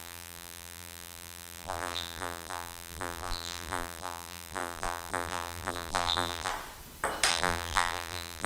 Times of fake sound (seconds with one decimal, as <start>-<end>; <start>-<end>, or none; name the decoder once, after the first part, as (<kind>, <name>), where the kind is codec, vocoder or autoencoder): 0.0-6.5 (vocoder, BigVGAN v2); 7.3-8.5